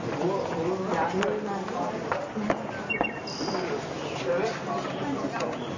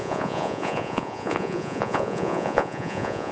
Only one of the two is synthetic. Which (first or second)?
second